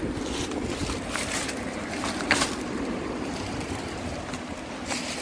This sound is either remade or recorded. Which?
recorded